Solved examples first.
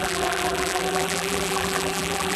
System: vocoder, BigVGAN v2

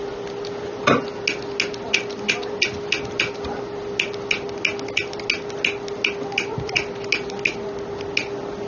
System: none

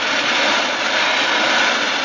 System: vocoder, BigVGAN v2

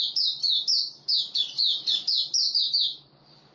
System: none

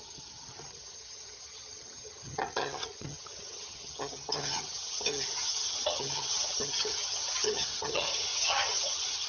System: vocoder, HiFi-GAN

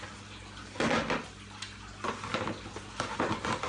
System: none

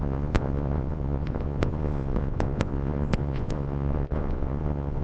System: vocoder, Vocos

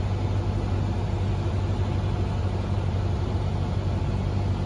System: none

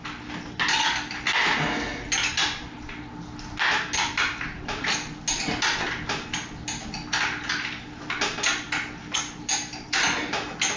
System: none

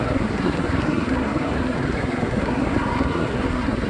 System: codec, SNAC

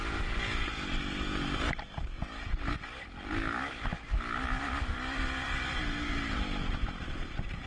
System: vocoder, BigVGAN v2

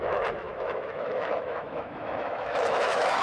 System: autoencoder, DAC-VAE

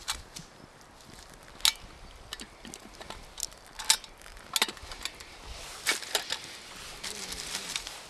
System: none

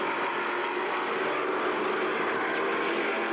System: none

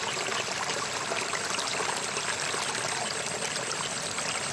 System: none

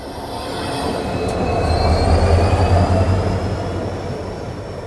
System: none